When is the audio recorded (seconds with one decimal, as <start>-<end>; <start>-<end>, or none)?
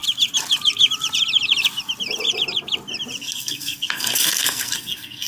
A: 0.0-3.2